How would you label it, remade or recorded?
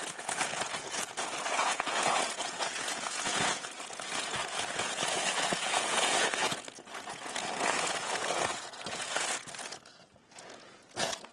remade